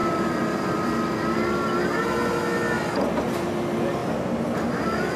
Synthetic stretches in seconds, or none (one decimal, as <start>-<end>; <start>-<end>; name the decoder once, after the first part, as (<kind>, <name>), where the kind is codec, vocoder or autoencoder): 0.0-0.9 (vocoder, BigVGAN v2)